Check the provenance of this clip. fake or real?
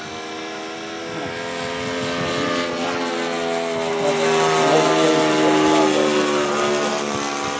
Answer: real